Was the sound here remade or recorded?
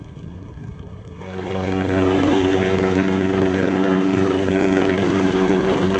remade